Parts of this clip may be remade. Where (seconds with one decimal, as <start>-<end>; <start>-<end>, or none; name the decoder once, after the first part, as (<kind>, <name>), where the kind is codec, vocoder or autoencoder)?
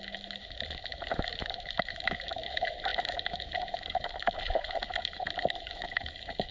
0.0-6.5 (autoencoder, DAC-VAE)